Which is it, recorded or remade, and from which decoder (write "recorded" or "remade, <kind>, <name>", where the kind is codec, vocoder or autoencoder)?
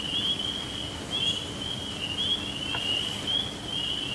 recorded